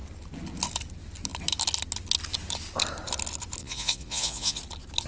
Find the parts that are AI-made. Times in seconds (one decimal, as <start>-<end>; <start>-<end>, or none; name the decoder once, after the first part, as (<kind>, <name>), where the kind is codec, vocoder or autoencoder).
3.6-4.6 (vocoder, Vocos)